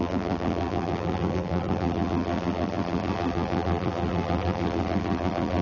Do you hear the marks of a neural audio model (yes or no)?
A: yes